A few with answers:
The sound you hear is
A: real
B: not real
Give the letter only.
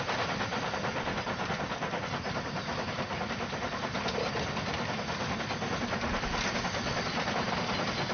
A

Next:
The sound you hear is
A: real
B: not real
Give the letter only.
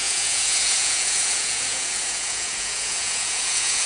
B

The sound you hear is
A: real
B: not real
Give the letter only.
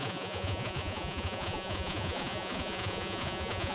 B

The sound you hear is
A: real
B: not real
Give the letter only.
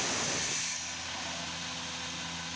A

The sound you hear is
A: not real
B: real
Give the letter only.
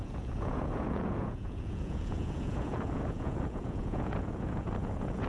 A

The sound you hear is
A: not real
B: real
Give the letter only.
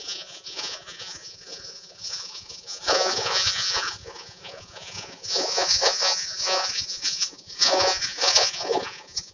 A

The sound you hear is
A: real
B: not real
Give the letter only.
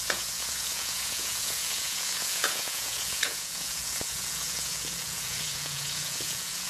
B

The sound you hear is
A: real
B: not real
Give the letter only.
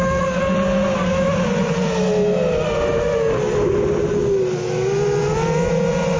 A